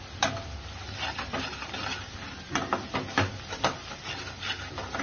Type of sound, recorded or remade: recorded